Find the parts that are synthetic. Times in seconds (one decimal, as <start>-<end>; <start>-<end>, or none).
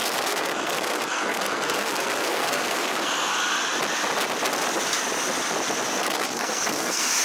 0.0-3.3; 6.0-7.2